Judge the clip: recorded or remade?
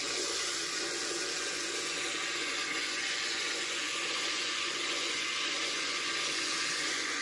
remade